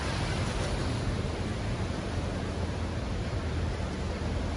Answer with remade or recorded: recorded